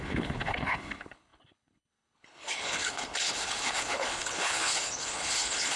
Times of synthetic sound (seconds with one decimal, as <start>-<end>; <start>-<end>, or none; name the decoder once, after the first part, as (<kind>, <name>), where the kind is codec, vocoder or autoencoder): 0.0-5.8 (codec, HILCodec)